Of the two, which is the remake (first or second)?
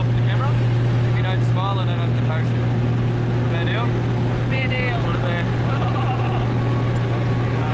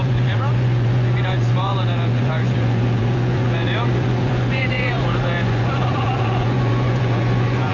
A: second